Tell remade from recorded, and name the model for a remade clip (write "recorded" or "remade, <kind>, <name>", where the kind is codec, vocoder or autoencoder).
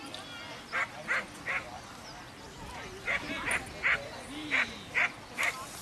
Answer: recorded